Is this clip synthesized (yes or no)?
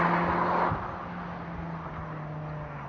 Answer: no